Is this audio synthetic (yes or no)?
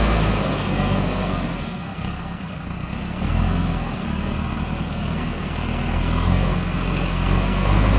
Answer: yes